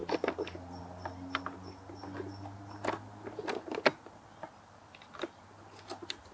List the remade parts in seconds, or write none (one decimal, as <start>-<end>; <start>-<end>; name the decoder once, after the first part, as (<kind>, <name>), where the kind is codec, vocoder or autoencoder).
none